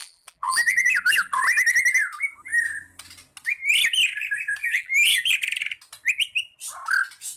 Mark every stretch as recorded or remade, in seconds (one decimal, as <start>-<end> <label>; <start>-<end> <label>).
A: 0.0-1.4 remade; 1.4-4.6 recorded; 4.6-5.3 remade; 5.3-7.4 recorded